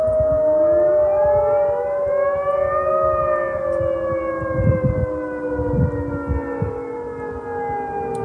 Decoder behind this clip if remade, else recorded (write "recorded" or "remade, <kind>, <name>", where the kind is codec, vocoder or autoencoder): recorded